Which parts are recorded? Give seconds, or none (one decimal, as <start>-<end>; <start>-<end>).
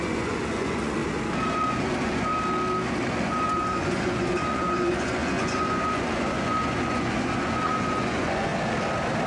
1.0-1.5; 2.3-3.1; 8.5-9.3